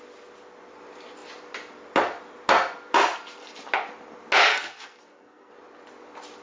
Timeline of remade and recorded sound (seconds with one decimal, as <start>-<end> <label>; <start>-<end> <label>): 0.0-4.5 recorded; 4.5-5.5 remade; 5.5-6.4 recorded